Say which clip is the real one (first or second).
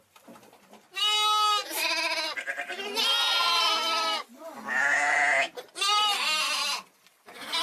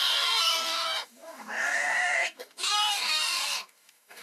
first